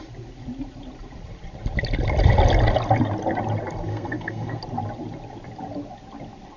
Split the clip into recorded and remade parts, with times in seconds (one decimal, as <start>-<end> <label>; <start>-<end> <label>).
0.0-3.9 recorded; 3.9-4.6 remade; 4.6-6.6 recorded